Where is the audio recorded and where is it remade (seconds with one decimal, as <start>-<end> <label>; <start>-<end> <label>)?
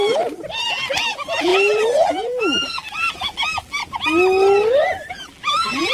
0.0-0.9 recorded; 0.9-3.8 remade; 3.8-5.1 recorded; 5.1-5.9 remade